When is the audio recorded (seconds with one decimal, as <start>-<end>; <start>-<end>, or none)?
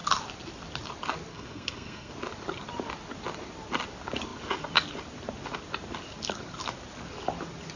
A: 0.0-1.3; 2.1-7.8